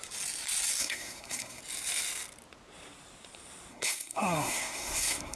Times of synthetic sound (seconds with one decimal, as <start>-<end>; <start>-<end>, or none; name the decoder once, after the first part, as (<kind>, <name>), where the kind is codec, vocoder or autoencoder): 0.8-1.6 (codec, SNAC); 3.7-5.4